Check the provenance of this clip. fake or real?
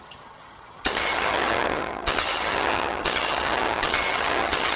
fake